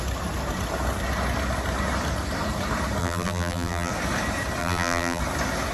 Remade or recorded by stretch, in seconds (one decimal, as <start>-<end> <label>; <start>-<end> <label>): 0.0-3.0 recorded; 3.0-3.9 remade; 3.9-4.6 recorded; 4.6-5.2 remade; 5.2-5.7 recorded